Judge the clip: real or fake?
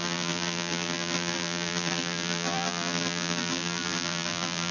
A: fake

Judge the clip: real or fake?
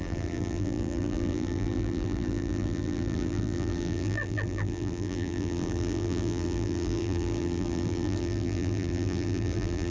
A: fake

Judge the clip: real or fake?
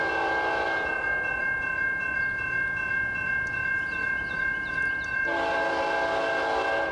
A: real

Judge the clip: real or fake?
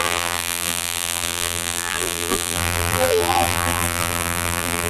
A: fake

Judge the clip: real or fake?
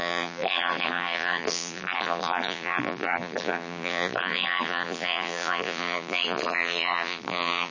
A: fake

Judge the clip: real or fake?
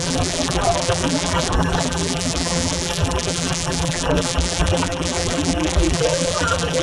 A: fake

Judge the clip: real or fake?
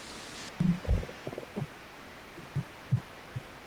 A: real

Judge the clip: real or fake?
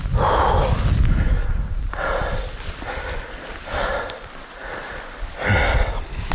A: real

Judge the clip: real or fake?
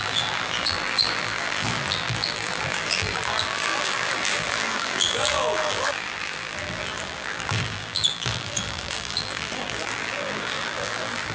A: fake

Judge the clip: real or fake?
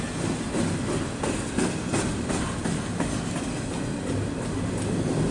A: real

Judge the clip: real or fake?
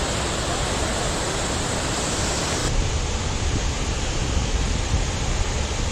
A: real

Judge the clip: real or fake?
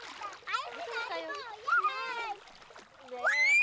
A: real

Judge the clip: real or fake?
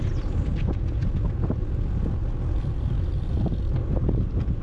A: real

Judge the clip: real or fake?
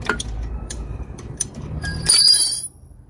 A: fake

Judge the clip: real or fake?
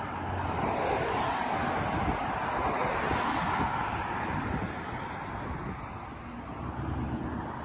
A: real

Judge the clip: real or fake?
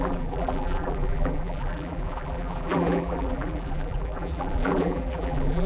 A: fake